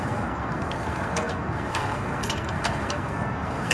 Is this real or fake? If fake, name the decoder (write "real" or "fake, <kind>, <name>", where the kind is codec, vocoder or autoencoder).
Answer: fake, codec, SNAC